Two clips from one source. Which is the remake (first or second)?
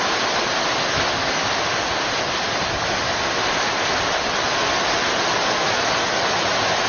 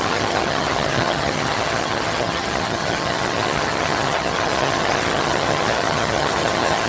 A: second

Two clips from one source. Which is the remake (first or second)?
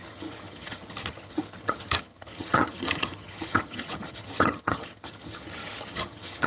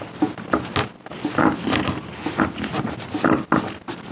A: first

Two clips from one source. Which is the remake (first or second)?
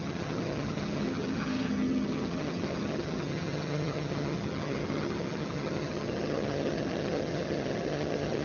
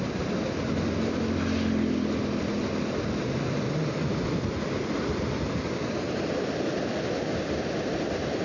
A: first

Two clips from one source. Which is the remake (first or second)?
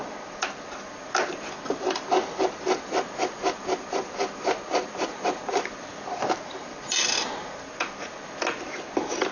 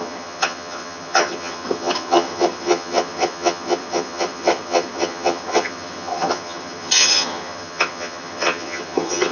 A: second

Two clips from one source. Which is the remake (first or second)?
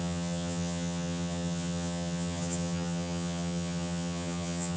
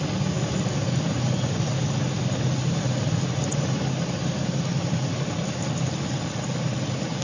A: first